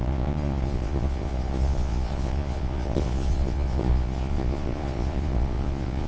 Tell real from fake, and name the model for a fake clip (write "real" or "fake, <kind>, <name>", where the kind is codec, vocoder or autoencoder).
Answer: fake, vocoder, Vocos